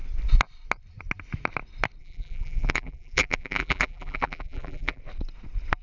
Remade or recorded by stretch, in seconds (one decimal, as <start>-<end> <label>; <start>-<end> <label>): 0.0-2.0 recorded; 2.0-5.0 remade; 5.0-5.8 recorded